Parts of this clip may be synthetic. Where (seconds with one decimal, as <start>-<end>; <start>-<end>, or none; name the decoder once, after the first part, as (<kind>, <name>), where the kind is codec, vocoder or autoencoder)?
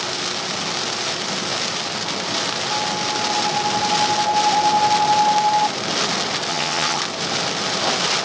6.5-7.0 (vocoder, HiFi-GAN)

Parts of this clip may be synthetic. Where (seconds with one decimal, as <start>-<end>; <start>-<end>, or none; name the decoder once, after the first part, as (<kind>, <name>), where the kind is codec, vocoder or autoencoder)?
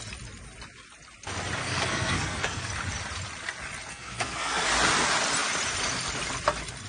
1.6-2.7 (codec, SNAC); 3.9-4.7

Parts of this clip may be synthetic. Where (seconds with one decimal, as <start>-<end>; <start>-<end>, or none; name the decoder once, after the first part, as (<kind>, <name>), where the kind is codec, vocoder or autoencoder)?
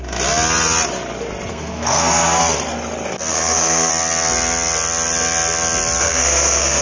1.5-2.4 (codec, SNAC); 3.3-3.9; 6.0-6.8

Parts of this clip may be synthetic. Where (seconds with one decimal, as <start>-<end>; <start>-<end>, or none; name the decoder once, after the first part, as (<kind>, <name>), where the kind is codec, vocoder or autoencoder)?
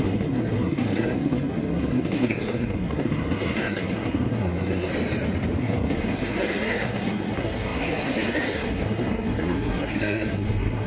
0.0-4.9 (codec, SNAC); 5.6-10.9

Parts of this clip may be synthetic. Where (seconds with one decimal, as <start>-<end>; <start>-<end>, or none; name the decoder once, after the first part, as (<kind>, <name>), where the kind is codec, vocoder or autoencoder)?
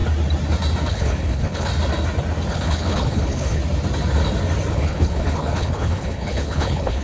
0.9-1.7 (codec, HILCodec); 2.5-3.6; 4.7-7.0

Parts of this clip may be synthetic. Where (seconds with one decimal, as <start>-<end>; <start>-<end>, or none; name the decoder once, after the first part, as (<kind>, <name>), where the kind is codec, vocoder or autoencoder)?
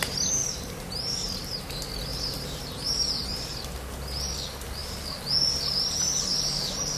0.4-1.7 (vocoder, BigVGAN v2); 2.1-3.6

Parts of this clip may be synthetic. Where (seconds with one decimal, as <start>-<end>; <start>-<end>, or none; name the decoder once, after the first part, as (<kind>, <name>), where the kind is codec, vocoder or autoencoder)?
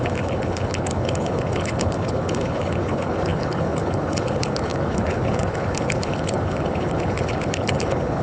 0.0-8.2 (codec, HILCodec)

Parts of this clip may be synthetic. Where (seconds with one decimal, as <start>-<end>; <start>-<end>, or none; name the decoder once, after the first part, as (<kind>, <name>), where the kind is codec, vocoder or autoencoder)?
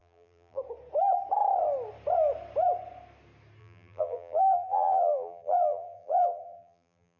0.0-0.6 (vocoder, BigVGAN v2); 3.6-7.2